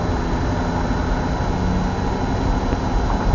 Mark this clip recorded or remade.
recorded